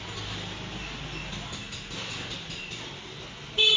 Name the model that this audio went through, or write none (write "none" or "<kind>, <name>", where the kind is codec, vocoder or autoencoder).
none